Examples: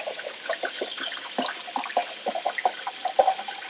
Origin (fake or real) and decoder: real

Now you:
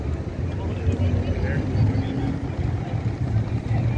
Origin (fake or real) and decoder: real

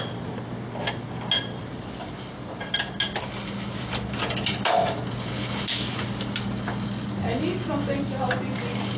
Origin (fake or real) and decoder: real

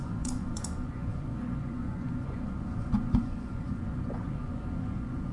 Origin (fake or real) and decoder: fake, vocoder, Vocos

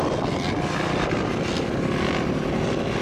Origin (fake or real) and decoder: real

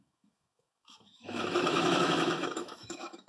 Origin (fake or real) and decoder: fake, autoencoder, DAC-VAE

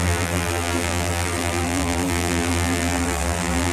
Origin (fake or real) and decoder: fake, vocoder, BigVGAN v2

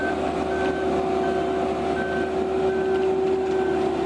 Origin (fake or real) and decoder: real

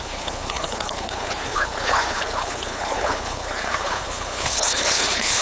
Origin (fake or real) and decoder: fake, codec, HILCodec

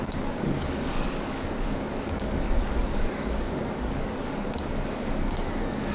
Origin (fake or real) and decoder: fake, codec, DAC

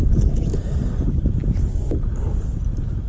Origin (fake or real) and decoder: real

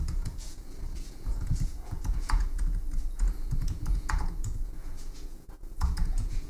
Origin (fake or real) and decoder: fake, vocoder, Vocos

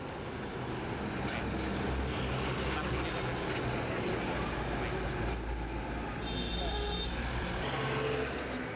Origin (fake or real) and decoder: real